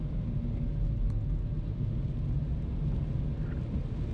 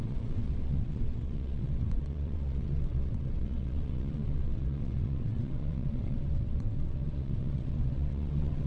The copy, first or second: second